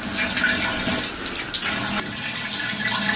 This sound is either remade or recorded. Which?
recorded